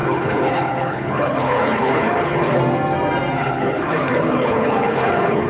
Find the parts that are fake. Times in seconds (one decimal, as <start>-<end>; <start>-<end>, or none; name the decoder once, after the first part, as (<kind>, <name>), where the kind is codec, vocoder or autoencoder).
0.0-2.6 (codec, HILCodec); 3.4-5.5